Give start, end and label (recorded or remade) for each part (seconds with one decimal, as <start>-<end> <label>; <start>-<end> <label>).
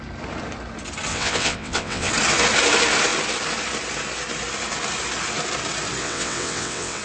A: 0.0-1.1 recorded; 1.1-2.1 remade; 2.1-6.0 recorded; 6.0-7.0 remade